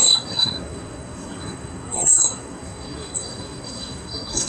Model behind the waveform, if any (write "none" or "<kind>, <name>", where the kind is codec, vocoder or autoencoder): codec, SNAC